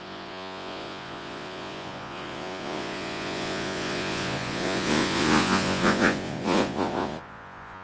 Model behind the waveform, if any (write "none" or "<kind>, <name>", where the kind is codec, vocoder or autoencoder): vocoder, Vocos